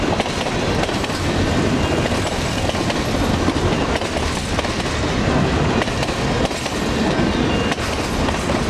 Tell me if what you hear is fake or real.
real